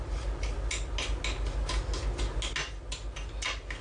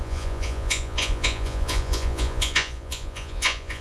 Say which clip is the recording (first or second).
first